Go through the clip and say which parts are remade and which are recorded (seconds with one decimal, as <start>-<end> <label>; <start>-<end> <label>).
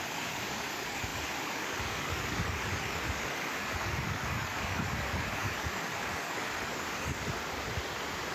0.0-7.2 remade; 7.2-8.3 recorded